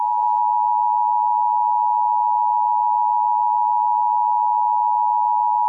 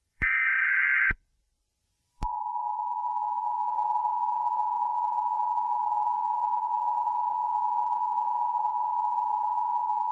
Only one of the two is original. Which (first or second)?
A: first